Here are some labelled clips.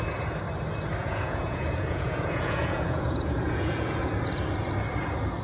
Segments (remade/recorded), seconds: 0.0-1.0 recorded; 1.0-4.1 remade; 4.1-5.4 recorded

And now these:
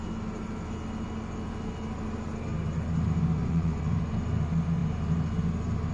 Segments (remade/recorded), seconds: 0.0-3.4 recorded; 3.4-4.0 remade; 4.0-5.9 recorded

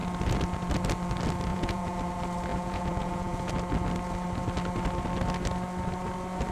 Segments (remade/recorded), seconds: 0.0-1.5 recorded; 1.5-2.0 remade; 2.0-2.5 recorded; 2.5-3.5 remade; 3.5-6.5 recorded

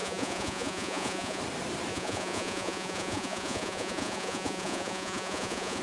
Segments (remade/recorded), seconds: 0.0-1.4 remade; 1.4-1.9 recorded; 1.9-5.8 remade

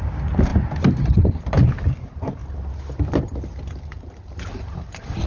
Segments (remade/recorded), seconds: 0.0-5.3 recorded

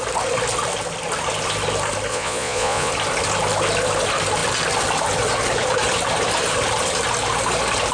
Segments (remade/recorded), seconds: 0.0-2.1 recorded; 2.1-2.9 remade; 2.9-7.9 recorded

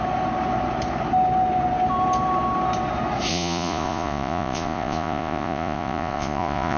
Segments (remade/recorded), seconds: 0.0-3.3 recorded; 3.3-6.8 remade